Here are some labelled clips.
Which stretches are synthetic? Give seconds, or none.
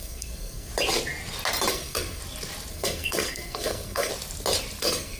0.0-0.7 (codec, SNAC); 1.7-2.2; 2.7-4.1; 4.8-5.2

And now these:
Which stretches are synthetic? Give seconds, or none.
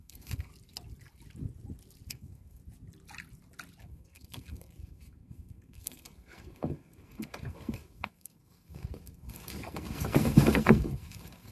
0.0-0.5 (codec, SNAC); 2.1-2.6; 3.8-11.5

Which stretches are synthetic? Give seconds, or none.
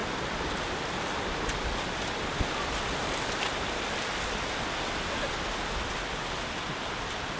none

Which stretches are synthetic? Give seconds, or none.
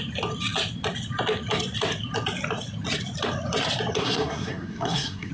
4.0-5.3 (codec, SNAC)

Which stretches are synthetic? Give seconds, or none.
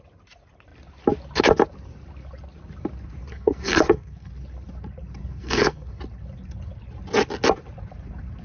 3.3-4.3 (codec, SNAC); 5.2-6.0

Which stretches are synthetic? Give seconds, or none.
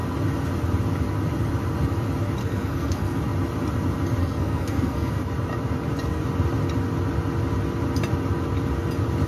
2.4-3.2 (codec, SNAC); 4.2-5.1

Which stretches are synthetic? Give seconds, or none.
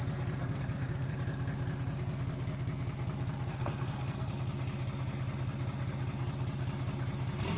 0.4-1.1 (codec, SNAC); 3.5-4.3